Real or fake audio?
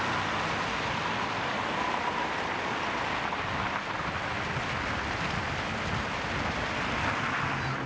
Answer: real